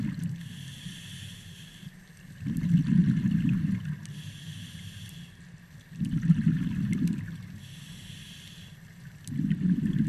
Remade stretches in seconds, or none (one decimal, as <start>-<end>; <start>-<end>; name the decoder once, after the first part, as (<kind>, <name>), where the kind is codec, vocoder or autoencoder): none